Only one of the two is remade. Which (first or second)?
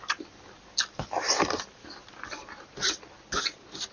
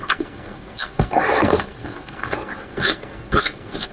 second